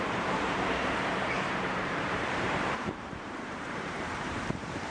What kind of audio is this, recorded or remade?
remade